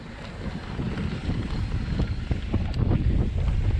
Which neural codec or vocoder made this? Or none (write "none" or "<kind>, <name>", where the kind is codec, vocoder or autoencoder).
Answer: none